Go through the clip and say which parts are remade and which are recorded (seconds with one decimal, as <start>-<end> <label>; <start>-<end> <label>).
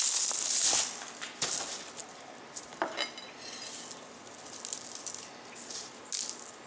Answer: 0.0-6.7 recorded